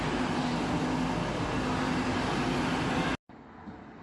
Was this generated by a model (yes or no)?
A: no